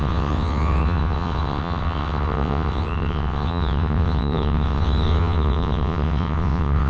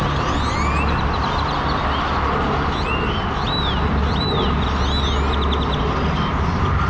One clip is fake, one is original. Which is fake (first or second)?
first